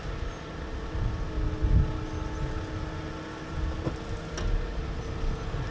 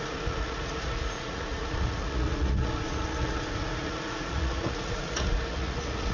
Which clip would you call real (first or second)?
first